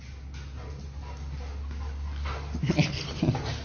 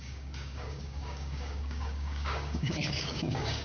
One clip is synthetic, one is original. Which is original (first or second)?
first